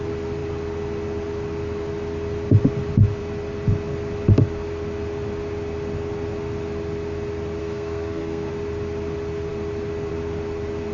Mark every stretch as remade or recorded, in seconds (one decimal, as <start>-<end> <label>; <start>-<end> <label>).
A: 0.0-7.6 recorded; 7.6-8.5 remade; 8.5-10.9 recorded